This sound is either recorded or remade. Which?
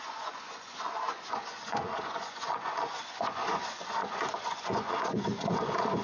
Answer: remade